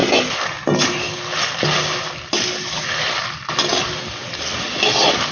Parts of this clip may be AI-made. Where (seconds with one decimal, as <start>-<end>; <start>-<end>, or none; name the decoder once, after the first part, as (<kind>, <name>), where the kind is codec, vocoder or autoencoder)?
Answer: none